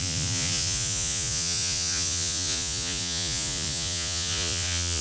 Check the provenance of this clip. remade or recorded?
remade